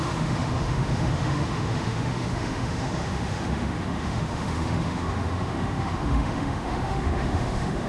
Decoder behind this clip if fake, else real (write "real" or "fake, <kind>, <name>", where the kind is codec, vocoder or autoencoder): fake, autoencoder, DAC-VAE